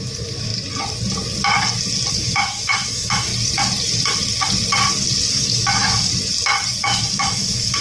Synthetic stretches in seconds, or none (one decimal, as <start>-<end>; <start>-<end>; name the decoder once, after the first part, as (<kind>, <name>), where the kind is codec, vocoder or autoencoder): 0.0-0.5 (autoencoder, DAC-VAE); 2.1-3.3; 5.3-6.1; 6.8-7.8